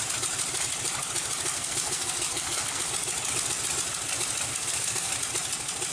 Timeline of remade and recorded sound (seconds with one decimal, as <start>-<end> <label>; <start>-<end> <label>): 0.0-1.5 recorded; 1.5-2.8 remade; 2.8-4.5 recorded; 4.5-5.1 remade; 5.1-5.9 recorded